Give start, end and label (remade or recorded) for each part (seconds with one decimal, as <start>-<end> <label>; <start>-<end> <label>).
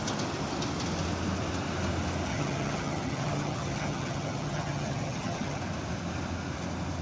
0.0-2.3 recorded; 2.3-5.6 remade; 5.6-7.0 recorded